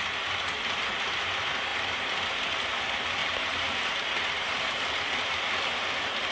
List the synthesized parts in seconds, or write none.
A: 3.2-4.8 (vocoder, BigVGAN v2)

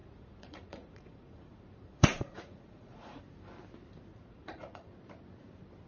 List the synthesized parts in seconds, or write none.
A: 0.0-3.2 (vocoder, Vocos); 4.1-4.9

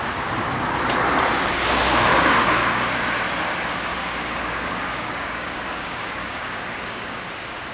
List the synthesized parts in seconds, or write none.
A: 2.1-2.9 (codec, DAC); 3.9-7.2

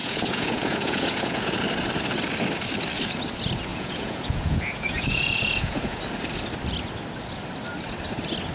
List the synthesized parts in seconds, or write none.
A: 0.0-1.5 (vocoder, Vocos); 3.7-6.0

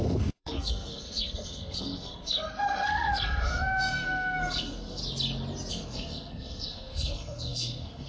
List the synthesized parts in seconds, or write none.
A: 0.0-5.0 (codec, SNAC); 5.7-8.1